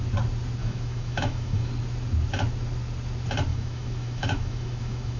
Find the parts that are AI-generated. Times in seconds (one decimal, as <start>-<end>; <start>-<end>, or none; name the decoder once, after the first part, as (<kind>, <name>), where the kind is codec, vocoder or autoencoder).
0.6-1.7 (autoencoder, DAC-VAE); 3.5-5.2